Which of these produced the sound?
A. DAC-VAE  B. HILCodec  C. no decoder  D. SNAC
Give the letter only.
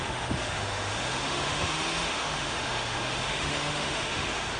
A